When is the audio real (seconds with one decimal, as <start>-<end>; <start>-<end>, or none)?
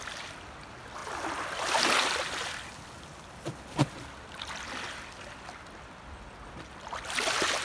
0.0-7.6